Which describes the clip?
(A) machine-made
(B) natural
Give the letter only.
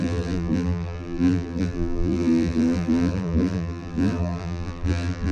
A